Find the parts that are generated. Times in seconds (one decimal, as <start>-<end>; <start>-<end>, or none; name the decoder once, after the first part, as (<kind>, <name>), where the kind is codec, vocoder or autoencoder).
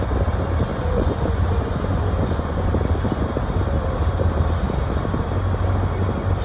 0.7-2.8 (vocoder, Vocos)